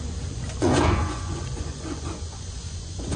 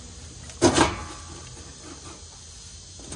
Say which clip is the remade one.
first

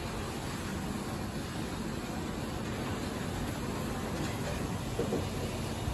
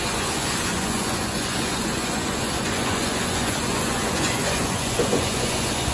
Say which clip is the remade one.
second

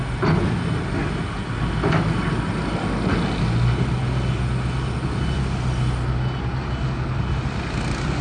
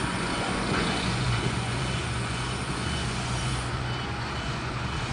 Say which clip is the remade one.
second